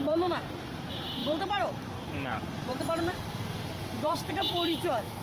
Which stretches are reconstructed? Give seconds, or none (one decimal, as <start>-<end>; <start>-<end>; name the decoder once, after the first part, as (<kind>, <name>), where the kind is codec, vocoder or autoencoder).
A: 0.0-5.2 (vocoder, BigVGAN v2)

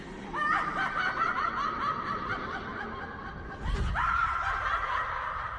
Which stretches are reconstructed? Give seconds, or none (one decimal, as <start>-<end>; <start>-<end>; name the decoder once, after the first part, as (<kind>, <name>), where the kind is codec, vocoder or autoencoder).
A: none

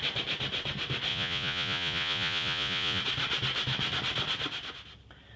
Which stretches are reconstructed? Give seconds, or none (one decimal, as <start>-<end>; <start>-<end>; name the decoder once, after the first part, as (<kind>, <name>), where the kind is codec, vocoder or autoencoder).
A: 1.1-3.0 (vocoder, Vocos)

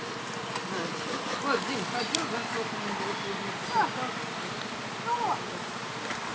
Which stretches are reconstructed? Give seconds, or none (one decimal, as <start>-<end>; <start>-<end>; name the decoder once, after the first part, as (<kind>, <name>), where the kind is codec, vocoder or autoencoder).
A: 0.6-1.2 (vocoder, BigVGAN v2)

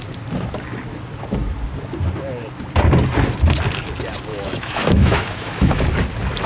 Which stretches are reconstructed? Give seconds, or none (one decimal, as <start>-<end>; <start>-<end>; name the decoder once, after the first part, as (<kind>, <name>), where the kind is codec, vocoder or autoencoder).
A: 4.3-5.8 (autoencoder, DAC-VAE)